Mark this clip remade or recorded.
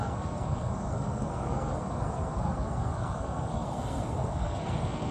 remade